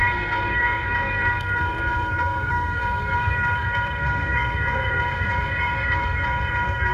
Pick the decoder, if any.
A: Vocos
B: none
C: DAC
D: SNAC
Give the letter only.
D